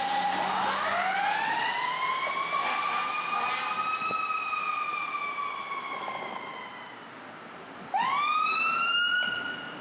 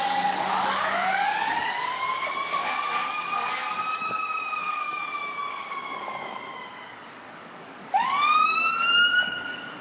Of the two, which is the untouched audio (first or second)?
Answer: first